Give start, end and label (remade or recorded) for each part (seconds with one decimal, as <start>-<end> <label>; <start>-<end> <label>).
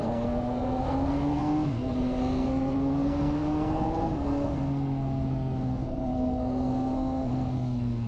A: 0.0-8.1 remade